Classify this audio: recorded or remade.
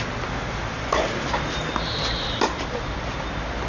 recorded